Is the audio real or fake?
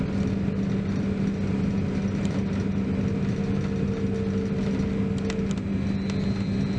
real